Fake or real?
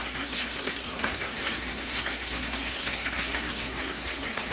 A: fake